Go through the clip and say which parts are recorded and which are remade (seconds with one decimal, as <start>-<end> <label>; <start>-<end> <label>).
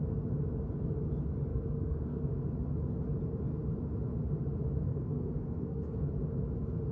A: 0.0-1.5 recorded; 1.5-2.4 remade; 2.4-4.9 recorded; 4.9-5.9 remade; 5.9-6.9 recorded